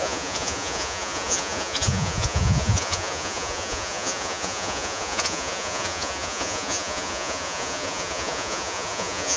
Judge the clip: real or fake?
fake